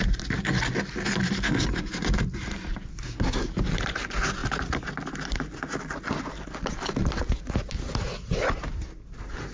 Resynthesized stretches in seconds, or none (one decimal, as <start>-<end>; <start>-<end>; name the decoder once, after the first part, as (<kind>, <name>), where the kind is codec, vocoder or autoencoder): 2.9-3.5 (codec, SNAC)